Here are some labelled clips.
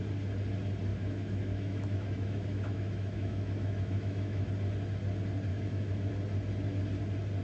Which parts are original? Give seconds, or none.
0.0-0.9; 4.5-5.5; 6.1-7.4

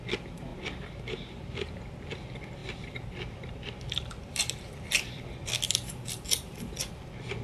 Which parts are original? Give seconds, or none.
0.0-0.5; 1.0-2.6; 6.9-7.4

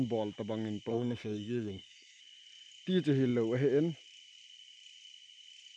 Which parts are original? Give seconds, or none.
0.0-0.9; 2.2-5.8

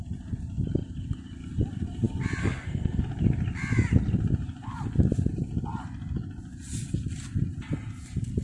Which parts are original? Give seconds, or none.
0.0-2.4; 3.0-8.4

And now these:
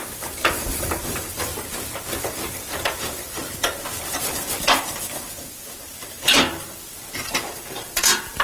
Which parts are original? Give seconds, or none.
1.5-2.2; 3.4-4.1

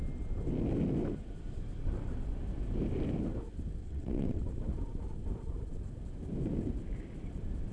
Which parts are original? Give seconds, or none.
0.0-3.8; 4.4-7.7

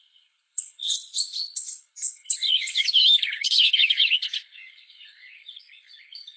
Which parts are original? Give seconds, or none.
none